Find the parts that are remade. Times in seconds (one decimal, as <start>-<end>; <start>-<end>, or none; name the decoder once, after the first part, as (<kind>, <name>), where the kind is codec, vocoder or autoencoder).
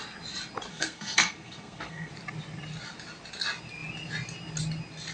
0.7-2.1 (codec, SNAC)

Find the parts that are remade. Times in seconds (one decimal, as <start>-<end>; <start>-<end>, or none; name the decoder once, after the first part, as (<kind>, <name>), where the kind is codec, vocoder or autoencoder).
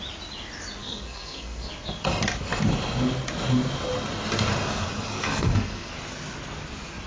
0.8-1.7 (codec, SNAC); 5.1-5.9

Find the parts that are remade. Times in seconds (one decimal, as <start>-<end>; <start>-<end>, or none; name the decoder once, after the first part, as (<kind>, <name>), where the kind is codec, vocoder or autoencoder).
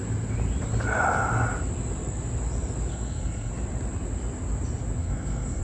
2.9-3.5 (codec, SNAC); 5.0-5.6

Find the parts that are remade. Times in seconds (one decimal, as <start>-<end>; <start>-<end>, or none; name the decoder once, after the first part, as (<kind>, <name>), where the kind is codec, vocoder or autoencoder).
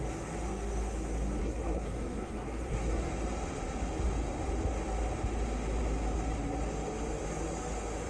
1.4-3.1 (codec, SNAC)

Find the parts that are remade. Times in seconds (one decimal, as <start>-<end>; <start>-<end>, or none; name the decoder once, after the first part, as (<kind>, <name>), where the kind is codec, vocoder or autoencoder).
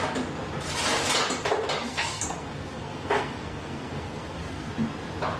1.8-4.7 (codec, SNAC)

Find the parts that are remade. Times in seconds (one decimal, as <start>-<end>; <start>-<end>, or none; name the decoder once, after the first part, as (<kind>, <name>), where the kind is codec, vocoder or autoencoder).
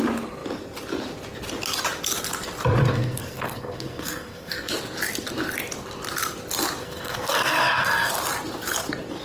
2.8-4.7 (codec, SNAC); 6.8-8.1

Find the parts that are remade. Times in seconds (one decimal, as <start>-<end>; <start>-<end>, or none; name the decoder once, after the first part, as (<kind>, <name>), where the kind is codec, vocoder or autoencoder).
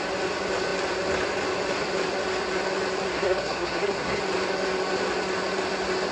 3.1-4.2 (codec, SNAC)